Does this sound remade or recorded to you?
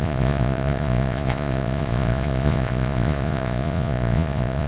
remade